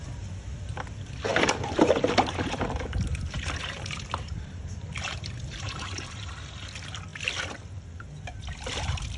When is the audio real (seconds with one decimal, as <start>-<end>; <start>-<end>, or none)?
0.0-1.3; 6.2-9.2